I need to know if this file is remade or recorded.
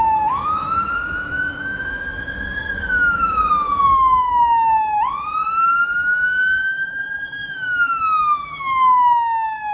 remade